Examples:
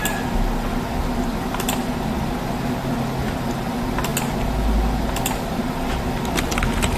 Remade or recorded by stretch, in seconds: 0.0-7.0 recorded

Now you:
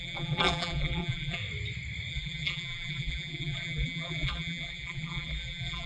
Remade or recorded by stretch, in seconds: 0.0-1.4 remade; 1.4-2.1 recorded; 2.1-5.9 remade

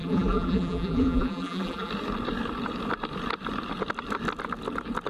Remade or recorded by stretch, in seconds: 0.0-1.9 remade; 1.9-5.1 recorded

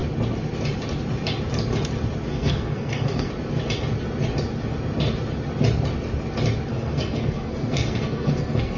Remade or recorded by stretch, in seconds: 0.0-2.3 recorded; 2.3-3.3 remade; 3.3-6.7 recorded; 6.7-8.8 remade

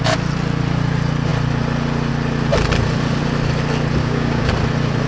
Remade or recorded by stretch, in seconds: 0.0-4.0 recorded; 4.0-4.5 remade; 4.5-5.1 recorded